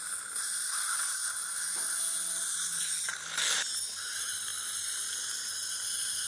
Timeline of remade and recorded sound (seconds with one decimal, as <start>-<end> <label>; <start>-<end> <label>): 0.0-6.3 recorded